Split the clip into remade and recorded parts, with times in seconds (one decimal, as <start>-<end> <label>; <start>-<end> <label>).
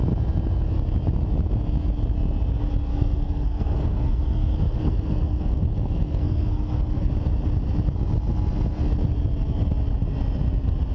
0.0-2.9 recorded; 2.9-7.1 remade; 7.1-10.9 recorded